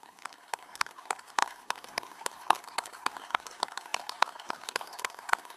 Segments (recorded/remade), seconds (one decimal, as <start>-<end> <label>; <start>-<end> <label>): 0.0-5.6 remade